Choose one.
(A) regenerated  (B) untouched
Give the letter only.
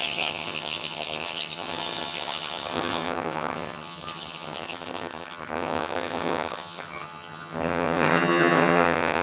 A